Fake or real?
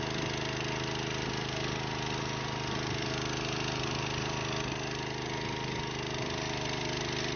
real